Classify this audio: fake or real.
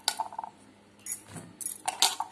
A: real